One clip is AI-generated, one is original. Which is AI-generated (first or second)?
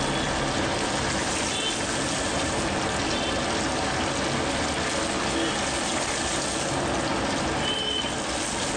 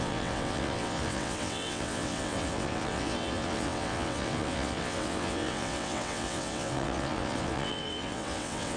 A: second